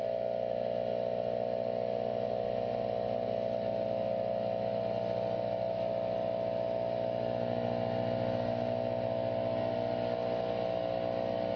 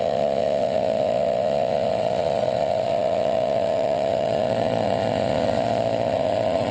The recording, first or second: first